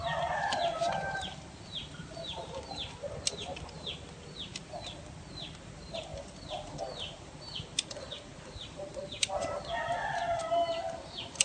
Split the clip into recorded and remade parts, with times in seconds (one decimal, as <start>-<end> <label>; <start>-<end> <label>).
0.0-11.4 recorded